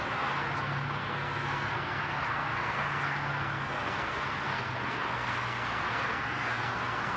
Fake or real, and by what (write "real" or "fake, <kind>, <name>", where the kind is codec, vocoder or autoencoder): fake, codec, SNAC